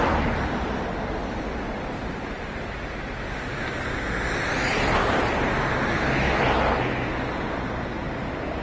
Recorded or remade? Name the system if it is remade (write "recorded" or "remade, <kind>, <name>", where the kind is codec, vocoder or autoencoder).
recorded